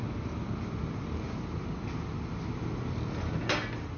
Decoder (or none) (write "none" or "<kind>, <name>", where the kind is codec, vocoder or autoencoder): none